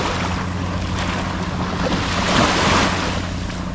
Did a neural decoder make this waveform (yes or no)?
no